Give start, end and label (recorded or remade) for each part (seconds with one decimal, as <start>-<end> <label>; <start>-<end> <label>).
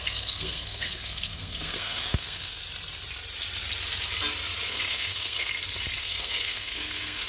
0.0-2.6 remade; 2.6-4.7 recorded; 4.7-5.5 remade; 5.5-6.0 recorded; 6.0-7.3 remade